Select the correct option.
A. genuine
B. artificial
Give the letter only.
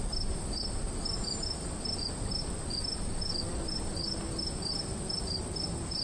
A